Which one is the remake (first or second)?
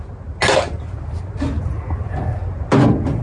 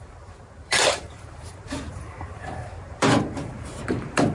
second